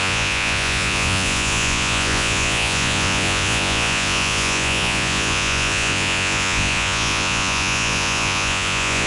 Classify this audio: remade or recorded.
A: remade